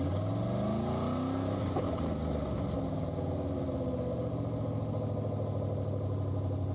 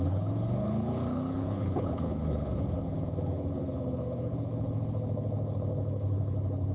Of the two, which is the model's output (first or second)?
second